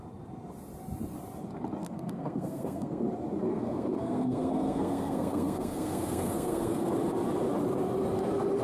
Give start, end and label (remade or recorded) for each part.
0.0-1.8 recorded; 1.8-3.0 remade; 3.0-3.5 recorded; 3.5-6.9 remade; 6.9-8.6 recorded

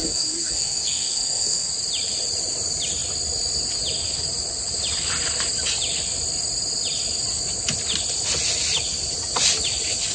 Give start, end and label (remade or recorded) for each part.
0.0-1.7 remade; 1.7-10.1 recorded